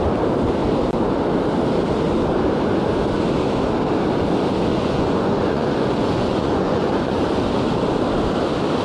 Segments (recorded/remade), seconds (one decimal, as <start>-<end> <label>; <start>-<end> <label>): 0.0-4.7 recorded; 4.7-7.2 remade; 7.2-8.8 recorded